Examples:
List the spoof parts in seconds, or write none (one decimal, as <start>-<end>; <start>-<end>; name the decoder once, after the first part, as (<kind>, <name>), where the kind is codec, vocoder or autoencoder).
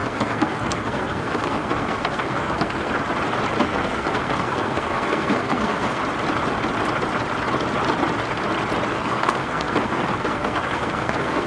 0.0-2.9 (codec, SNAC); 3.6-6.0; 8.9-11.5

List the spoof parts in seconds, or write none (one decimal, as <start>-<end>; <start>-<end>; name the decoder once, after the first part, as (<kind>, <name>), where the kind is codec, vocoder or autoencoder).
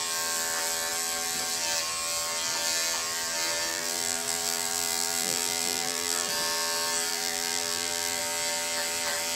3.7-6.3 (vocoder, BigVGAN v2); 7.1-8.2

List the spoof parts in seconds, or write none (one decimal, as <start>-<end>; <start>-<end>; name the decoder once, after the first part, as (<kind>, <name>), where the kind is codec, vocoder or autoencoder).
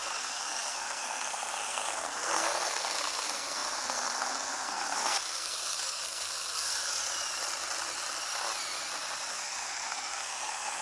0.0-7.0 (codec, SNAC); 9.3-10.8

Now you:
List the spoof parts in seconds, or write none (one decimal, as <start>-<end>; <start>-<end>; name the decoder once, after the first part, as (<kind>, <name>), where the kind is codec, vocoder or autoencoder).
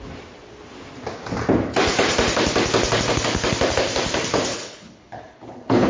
4.5-5.9 (codec, HILCodec)